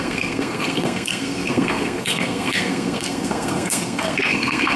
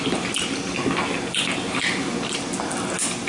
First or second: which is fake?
first